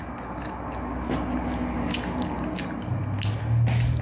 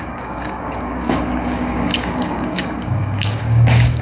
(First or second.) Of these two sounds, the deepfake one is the second